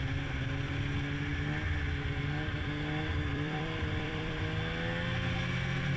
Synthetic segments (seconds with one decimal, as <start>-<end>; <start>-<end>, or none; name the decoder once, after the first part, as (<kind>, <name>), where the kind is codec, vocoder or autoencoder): 3.3-4.4 (vocoder, BigVGAN v2)